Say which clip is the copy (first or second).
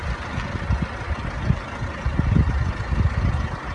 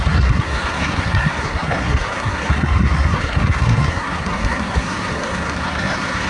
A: second